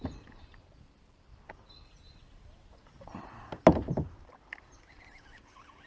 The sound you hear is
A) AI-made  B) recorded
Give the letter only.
B